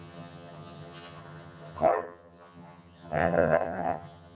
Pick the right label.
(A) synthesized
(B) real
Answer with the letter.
A